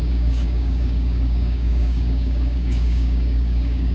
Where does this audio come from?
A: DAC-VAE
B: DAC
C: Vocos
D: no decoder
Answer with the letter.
B